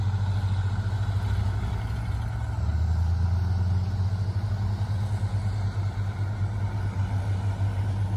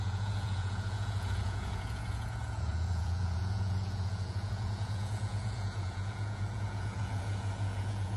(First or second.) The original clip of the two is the first